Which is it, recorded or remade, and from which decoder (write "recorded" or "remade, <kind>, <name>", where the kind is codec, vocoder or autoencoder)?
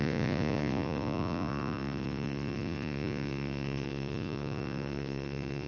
remade, vocoder, Vocos